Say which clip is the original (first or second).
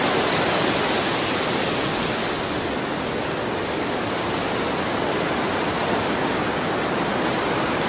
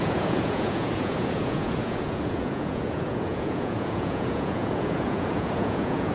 first